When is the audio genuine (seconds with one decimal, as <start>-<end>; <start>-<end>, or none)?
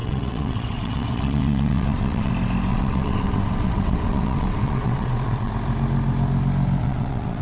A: 2.3-2.7; 5.5-6.8